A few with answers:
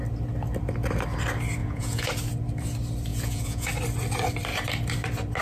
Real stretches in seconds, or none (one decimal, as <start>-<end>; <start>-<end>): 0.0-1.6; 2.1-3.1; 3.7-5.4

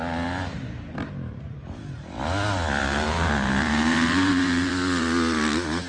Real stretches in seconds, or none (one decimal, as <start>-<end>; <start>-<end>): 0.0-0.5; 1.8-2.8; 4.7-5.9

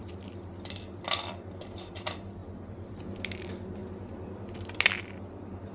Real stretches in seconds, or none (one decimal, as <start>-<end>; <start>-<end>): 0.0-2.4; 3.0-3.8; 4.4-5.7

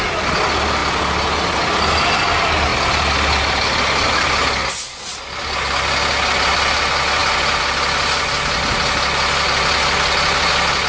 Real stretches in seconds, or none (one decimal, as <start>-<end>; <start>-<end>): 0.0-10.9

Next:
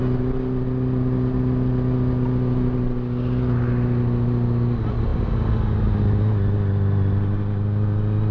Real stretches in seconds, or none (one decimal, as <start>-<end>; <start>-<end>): 0.0-8.3

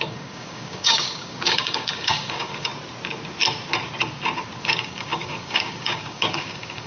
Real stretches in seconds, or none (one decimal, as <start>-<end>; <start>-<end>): 2.7-4.6

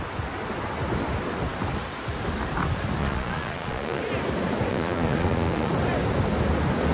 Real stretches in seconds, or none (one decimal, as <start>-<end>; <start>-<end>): 0.0-3.0; 4.0-4.7; 5.7-6.9

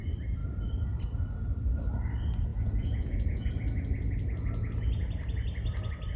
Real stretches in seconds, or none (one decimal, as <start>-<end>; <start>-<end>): 0.0-2.5; 3.5-6.2